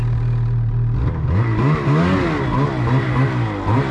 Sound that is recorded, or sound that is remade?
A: recorded